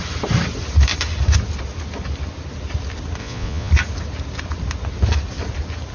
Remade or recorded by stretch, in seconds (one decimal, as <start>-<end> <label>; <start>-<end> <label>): 0.0-3.2 recorded; 3.2-3.7 remade; 3.7-5.9 recorded